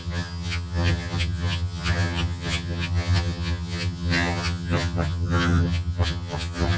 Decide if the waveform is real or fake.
fake